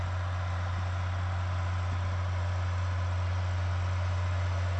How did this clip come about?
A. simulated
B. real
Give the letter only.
B